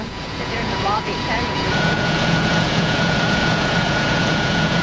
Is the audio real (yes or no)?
no